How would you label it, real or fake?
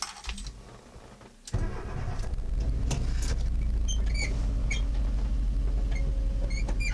real